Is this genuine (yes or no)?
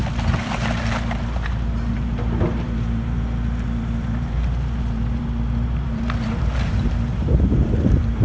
no